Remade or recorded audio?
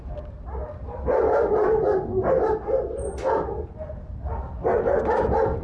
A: recorded